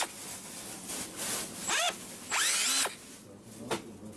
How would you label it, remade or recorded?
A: recorded